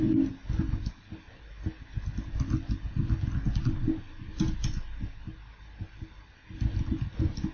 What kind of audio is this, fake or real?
real